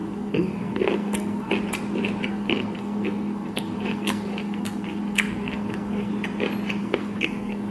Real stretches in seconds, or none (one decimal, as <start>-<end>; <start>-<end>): 1.5-2.3; 6.1-6.8